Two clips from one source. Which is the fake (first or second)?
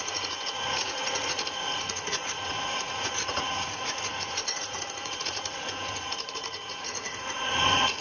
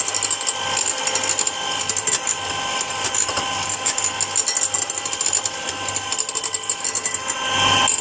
first